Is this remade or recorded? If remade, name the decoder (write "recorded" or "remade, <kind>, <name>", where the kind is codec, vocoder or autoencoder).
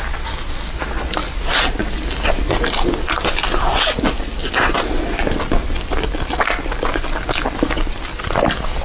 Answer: recorded